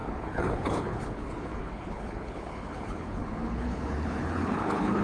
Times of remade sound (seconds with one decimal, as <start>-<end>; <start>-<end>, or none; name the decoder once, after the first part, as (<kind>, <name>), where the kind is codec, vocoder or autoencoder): 0.0-5.0 (codec, HILCodec)